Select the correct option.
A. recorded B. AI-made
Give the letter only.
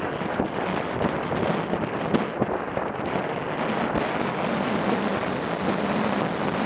A